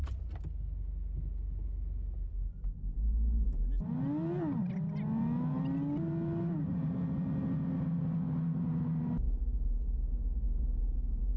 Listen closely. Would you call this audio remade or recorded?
recorded